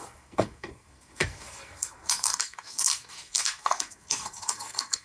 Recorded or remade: remade